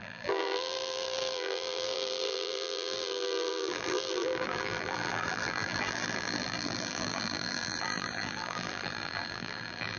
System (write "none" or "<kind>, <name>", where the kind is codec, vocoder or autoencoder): vocoder, BigVGAN v2